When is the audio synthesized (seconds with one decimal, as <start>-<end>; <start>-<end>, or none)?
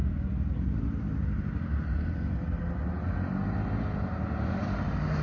none